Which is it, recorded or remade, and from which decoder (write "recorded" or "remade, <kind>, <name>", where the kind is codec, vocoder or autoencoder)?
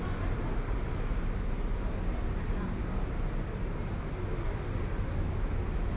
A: recorded